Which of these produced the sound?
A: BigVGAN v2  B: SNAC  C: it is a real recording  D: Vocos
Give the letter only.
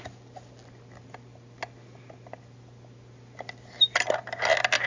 C